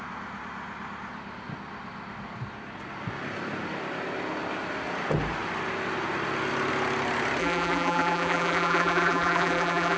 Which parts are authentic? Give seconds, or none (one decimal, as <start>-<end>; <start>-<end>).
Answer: 0.0-7.4